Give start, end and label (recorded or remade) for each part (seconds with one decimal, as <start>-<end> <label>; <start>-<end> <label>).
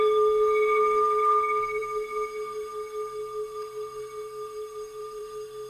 0.0-5.7 remade